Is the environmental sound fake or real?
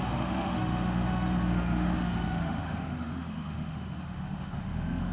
fake